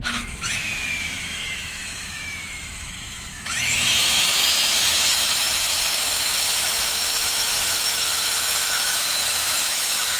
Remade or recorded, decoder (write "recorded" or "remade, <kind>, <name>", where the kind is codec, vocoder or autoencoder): remade, autoencoder, DAC-VAE